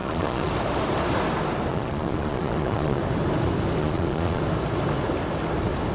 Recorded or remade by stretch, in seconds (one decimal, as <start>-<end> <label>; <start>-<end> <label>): 0.0-0.5 remade; 0.5-1.7 recorded; 1.7-3.0 remade; 3.0-3.8 recorded; 3.8-4.4 remade; 4.4-5.9 recorded